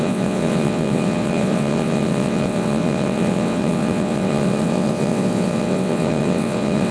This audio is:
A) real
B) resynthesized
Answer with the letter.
B